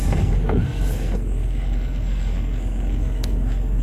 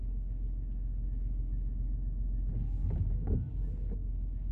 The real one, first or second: second